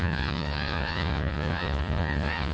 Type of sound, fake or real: fake